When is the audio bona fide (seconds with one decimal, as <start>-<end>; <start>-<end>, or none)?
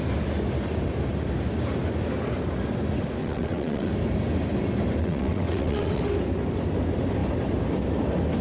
0.0-3.2; 3.9-5.0; 6.0-8.4